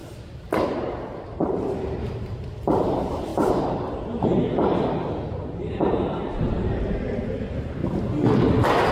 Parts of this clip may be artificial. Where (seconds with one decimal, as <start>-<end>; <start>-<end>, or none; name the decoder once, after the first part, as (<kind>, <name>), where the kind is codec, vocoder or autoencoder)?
1.3-3.3 (vocoder, BigVGAN v2); 5.7-7.8